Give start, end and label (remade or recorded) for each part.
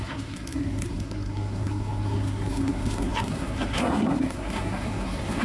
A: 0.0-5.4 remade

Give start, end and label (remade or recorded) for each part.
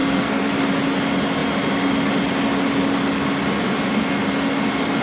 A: 0.0-0.5 remade; 0.5-5.0 recorded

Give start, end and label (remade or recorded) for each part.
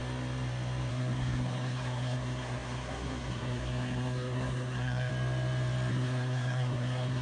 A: 0.0-0.9 recorded; 0.9-5.1 remade; 5.1-5.9 recorded; 5.9-7.2 remade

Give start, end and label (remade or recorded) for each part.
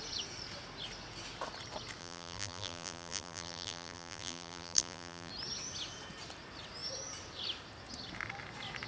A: 0.0-2.0 recorded; 2.0-5.3 remade; 5.3-8.9 recorded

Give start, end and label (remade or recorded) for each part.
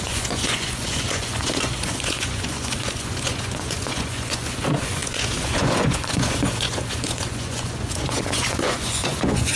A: 0.0-9.6 remade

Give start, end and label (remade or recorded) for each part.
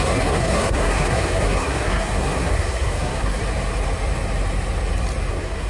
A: 0.0-3.4 remade; 3.4-5.3 recorded; 5.3-5.7 remade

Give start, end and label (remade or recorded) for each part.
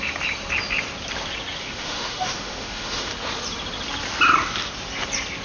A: 0.0-1.6 recorded; 1.6-3.1 remade; 3.1-5.4 recorded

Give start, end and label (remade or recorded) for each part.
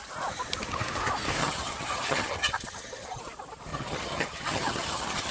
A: 0.0-1.4 recorded; 1.4-3.2 remade; 3.2-3.7 recorded; 3.7-5.3 remade